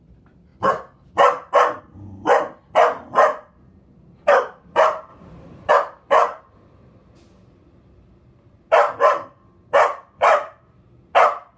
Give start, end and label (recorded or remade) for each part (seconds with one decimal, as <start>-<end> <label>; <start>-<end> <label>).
0.0-5.1 recorded; 5.1-5.7 remade; 5.7-11.6 recorded